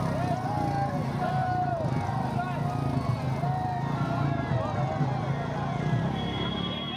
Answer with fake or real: real